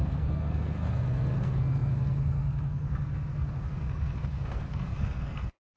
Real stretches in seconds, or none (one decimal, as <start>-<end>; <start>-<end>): none